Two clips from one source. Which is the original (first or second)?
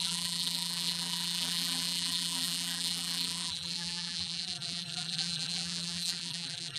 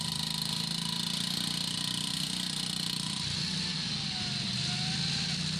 second